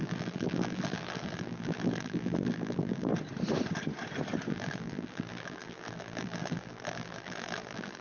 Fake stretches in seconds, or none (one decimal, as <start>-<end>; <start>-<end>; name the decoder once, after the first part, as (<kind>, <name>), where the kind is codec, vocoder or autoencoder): 0.0-3.1 (vocoder, BigVGAN v2); 4.5-8.0